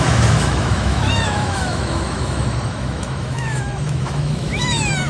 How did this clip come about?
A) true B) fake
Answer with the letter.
B